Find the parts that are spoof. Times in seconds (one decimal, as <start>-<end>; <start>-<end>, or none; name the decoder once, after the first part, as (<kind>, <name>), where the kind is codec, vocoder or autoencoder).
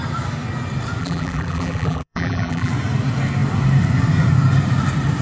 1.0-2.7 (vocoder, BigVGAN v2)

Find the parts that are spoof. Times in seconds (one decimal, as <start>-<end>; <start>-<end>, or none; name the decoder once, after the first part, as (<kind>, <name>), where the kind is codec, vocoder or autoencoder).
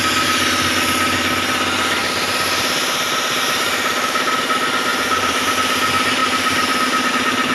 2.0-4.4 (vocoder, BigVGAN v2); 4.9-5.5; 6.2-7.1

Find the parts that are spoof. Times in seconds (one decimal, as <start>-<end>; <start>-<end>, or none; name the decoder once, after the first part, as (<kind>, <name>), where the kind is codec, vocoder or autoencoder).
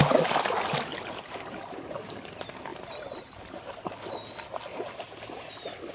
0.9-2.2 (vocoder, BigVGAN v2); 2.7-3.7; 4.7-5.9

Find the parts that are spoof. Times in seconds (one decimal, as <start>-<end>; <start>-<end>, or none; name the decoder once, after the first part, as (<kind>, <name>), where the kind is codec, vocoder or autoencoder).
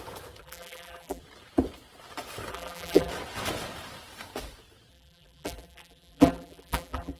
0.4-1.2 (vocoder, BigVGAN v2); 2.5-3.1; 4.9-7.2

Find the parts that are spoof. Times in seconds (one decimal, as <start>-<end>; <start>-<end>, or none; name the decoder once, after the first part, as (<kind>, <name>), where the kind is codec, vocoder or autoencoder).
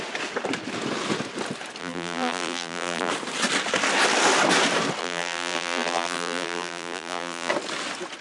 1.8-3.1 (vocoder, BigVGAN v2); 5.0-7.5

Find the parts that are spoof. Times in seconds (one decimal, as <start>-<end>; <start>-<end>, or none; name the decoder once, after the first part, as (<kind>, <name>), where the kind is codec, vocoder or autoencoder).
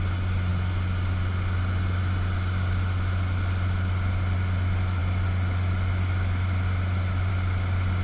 none